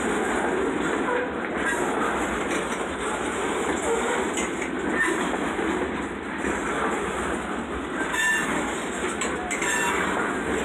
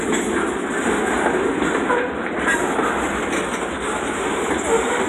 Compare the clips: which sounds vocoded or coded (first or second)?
second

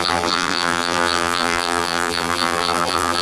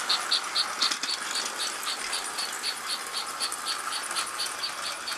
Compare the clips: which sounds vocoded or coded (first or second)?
first